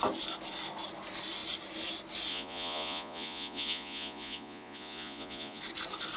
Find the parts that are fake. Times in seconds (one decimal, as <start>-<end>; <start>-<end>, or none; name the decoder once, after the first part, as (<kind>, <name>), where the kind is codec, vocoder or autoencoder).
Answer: 2.3-5.6 (vocoder, Vocos)